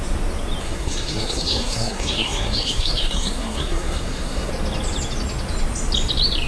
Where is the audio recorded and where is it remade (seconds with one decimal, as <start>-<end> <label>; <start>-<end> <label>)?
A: 0.0-0.6 recorded; 0.6-4.5 remade; 4.5-6.5 recorded